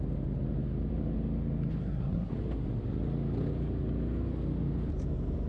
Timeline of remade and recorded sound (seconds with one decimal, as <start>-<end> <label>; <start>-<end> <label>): 0.0-1.8 recorded; 1.8-2.3 remade; 2.3-5.5 recorded